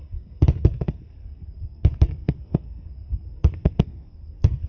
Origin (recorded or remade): remade